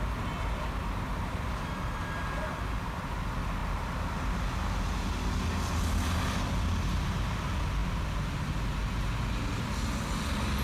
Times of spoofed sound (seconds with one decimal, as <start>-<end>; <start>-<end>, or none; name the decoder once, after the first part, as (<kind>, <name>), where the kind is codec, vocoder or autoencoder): none